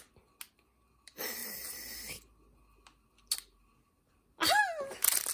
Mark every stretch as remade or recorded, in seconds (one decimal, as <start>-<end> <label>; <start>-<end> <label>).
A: 0.0-5.3 recorded